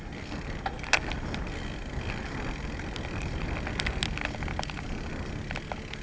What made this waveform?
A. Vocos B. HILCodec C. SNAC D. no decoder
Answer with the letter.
D